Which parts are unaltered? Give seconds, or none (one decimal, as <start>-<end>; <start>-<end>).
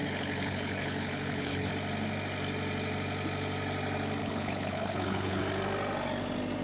1.7-4.2; 5.4-6.6